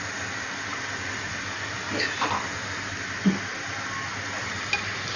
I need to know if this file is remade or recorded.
recorded